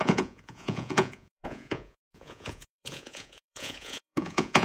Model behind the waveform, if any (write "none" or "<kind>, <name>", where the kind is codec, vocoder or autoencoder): vocoder, Vocos